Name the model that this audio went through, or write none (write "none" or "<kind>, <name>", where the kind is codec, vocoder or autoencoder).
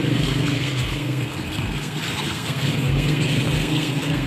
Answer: codec, SNAC